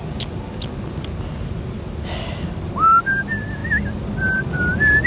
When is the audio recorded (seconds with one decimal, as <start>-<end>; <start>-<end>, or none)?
0.0-5.1